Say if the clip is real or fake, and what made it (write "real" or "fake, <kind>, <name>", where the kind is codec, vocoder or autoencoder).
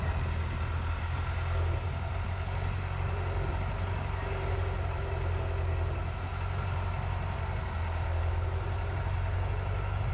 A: real